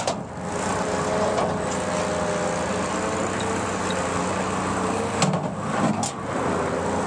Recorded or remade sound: recorded